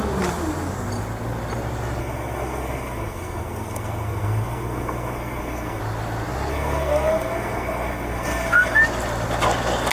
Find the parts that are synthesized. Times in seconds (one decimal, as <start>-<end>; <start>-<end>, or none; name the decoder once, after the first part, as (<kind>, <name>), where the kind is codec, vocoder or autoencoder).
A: 2.0-5.8 (codec, SNAC); 6.5-8.8

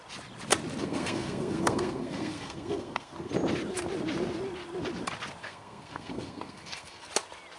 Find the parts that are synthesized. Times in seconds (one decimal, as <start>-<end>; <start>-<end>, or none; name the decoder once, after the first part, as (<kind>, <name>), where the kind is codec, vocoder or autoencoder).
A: 0.8-3.3 (codec, SNAC); 5.4-7.1

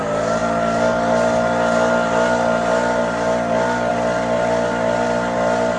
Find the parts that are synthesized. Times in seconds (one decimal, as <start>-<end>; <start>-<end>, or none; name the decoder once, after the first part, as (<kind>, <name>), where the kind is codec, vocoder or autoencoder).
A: none

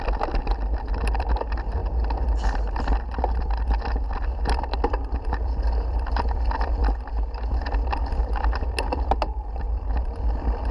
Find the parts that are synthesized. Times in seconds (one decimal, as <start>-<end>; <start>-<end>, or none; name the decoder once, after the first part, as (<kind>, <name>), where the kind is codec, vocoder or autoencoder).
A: none

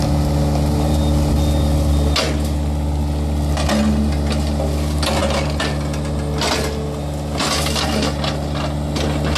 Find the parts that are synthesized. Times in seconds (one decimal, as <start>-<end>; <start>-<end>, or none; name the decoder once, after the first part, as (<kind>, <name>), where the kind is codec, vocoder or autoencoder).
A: none